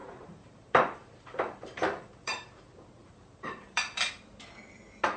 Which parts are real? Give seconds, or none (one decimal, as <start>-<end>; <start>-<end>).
2.6-3.0; 4.1-5.2